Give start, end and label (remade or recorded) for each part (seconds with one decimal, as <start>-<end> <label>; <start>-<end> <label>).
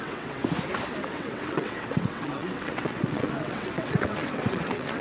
0.0-0.4 remade; 0.4-1.1 recorded; 1.1-5.0 remade